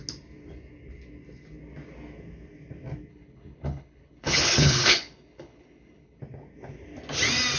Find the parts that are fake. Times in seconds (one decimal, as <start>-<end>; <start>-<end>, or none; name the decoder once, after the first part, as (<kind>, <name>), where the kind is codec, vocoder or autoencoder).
3.1-6.2 (codec, HILCodec)